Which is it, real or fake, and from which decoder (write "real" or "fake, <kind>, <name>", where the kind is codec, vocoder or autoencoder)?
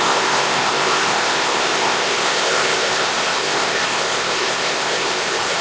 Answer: fake, codec, ZipCodec